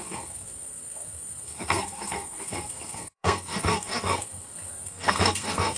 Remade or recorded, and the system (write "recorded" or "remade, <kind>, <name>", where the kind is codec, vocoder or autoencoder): remade, codec, SNAC